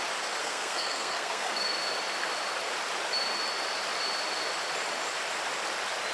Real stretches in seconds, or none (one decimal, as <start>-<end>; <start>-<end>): 0.0-0.4; 1.5-6.1